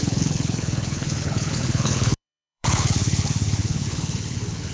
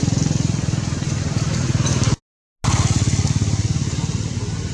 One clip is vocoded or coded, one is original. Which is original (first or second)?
second